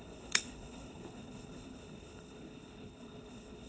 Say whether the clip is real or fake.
fake